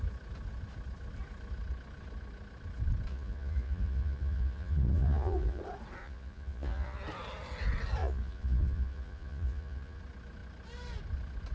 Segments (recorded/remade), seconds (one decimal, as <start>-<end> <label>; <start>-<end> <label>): 0.0-3.1 recorded; 3.1-5.6 remade; 5.6-6.0 recorded; 6.0-7.0 remade; 7.0-8.0 recorded; 8.0-10.0 remade; 10.0-11.5 recorded

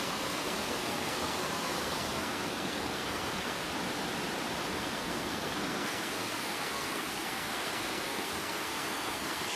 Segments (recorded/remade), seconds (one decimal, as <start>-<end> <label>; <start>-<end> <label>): 0.0-3.6 remade; 3.6-4.7 recorded; 4.7-9.6 remade

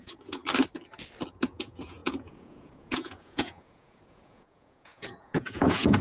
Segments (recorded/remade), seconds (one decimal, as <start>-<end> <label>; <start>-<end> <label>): 0.0-0.4 remade; 0.4-1.3 recorded; 1.3-6.0 remade